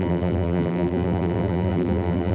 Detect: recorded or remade remade